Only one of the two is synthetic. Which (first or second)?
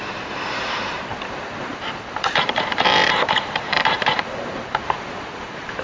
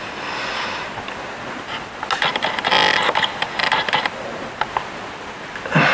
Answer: first